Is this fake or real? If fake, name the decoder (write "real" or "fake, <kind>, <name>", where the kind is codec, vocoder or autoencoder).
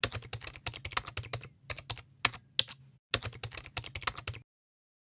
real